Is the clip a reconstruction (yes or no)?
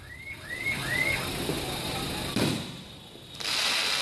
yes